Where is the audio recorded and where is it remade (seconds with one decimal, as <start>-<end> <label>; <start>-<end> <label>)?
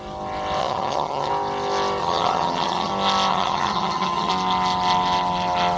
0.0-0.6 recorded; 0.6-1.3 remade; 1.3-2.0 recorded; 2.0-2.9 remade; 2.9-3.3 recorded; 3.3-4.3 remade; 4.3-5.8 recorded